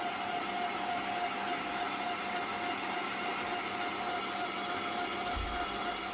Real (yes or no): yes